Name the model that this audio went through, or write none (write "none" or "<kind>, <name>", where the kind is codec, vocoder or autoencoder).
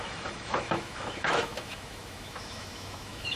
autoencoder, DAC-VAE